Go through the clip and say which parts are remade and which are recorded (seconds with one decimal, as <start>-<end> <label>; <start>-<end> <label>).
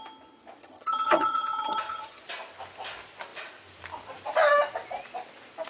0.0-0.6 recorded; 0.6-2.2 remade; 2.2-5.7 recorded